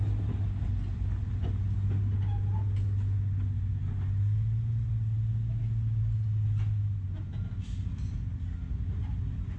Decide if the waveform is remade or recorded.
recorded